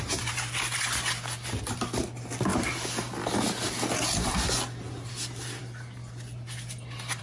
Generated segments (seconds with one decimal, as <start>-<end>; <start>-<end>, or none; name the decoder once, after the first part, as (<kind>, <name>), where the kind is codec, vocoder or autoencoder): none